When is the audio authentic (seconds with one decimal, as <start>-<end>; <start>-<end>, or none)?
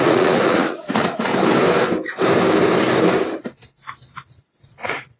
1.3-4.4